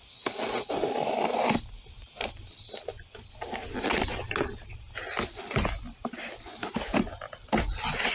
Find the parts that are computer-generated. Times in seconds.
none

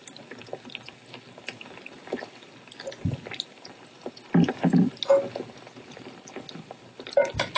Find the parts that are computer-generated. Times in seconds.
none

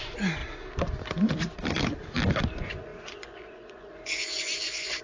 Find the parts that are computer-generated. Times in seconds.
0.0-0.4 (vocoder, Vocos); 2.5-5.0